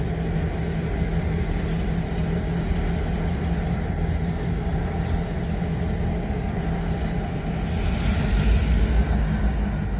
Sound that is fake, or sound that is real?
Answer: real